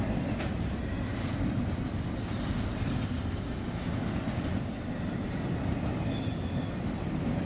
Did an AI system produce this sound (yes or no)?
no